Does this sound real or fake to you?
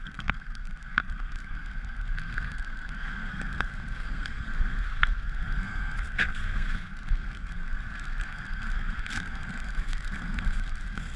fake